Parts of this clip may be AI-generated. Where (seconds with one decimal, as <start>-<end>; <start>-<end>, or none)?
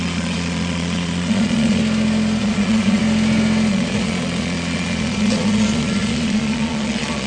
0.0-1.8; 2.4-3.0; 3.7-7.3